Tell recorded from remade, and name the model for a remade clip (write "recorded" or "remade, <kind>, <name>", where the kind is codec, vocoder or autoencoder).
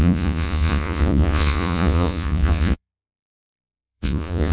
remade, vocoder, Vocos